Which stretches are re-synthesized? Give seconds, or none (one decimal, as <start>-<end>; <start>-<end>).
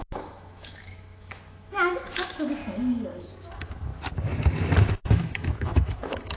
0.0-2.6; 3.5-3.9; 4.9-6.4